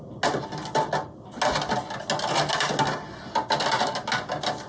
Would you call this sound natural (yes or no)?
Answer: yes